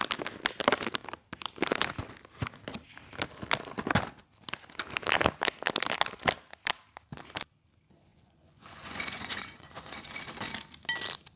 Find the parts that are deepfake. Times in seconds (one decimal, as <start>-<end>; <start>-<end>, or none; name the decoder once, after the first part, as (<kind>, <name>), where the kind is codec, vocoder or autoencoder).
8.1-10.2 (vocoder, Vocos)